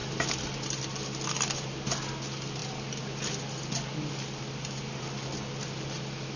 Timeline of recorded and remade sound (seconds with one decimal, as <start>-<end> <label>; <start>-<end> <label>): 0.0-6.4 recorded